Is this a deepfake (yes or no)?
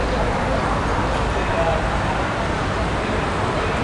no